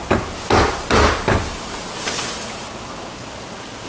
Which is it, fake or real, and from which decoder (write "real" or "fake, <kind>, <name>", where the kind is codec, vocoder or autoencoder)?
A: real